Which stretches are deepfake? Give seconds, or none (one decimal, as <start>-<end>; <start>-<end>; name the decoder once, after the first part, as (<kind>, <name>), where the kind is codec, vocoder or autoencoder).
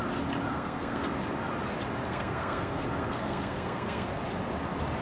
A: 0.5-1.1 (codec, SNAC); 2.1-4.1